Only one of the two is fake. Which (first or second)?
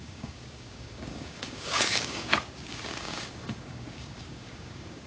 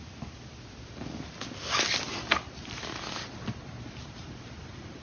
first